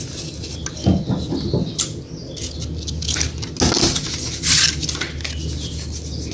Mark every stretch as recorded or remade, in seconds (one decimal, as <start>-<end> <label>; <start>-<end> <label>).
0.0-6.3 recorded